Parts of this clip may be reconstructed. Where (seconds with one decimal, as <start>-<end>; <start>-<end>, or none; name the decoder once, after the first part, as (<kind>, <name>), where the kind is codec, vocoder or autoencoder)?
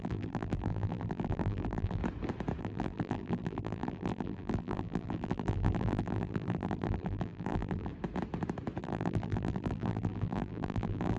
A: 0.0-2.0 (vocoder, BigVGAN v2); 2.6-7.9; 8.8-11.2